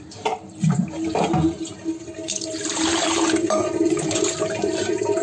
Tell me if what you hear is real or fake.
fake